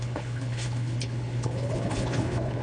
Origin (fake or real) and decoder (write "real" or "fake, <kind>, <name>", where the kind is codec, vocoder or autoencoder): fake, codec, HILCodec